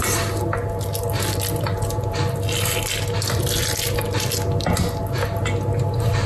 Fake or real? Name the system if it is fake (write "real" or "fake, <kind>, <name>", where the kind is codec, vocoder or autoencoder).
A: real